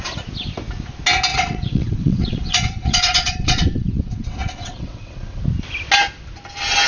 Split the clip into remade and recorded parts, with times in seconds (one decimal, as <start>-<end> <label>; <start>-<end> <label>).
0.0-1.3 recorded; 1.3-5.4 remade; 5.4-6.9 recorded